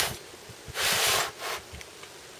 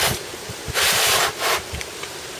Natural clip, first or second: first